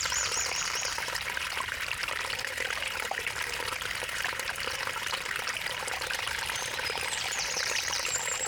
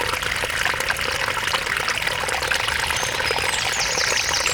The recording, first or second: second